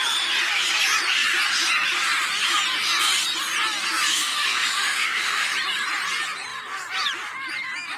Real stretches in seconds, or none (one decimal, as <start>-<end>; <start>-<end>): 0.0-4.1; 5.5-8.0